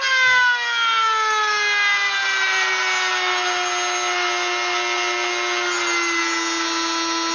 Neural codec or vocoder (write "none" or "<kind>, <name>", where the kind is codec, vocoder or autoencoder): none